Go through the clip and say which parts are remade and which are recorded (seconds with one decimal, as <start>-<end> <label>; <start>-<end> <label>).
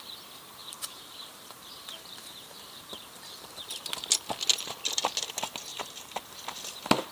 0.0-0.6 recorded; 0.6-3.9 remade; 3.9-5.7 recorded; 5.7-6.2 remade; 6.2-7.1 recorded